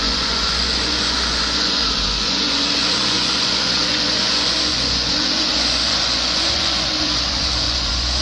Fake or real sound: fake